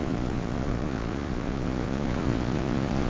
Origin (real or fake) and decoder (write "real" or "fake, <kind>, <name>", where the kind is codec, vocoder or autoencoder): fake, vocoder, Vocos